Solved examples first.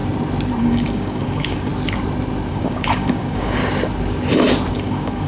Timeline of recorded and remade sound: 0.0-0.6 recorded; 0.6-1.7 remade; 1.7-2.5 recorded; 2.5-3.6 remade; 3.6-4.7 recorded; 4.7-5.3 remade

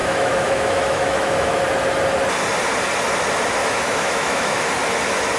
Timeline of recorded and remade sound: 0.0-1.6 remade; 1.6-3.6 recorded; 3.6-4.7 remade; 4.7-5.4 recorded